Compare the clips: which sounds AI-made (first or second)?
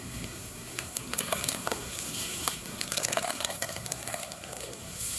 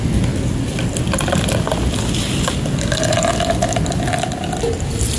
first